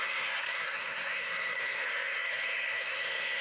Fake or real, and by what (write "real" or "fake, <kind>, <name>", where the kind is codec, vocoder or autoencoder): fake, codec, SNAC